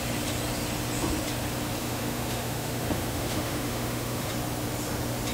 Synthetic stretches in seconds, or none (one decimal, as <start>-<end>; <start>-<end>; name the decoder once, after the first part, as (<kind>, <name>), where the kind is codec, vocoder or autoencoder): 1.8-4.3 (autoencoder, DAC-VAE)